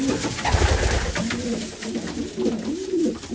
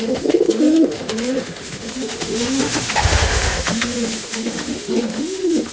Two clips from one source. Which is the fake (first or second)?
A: second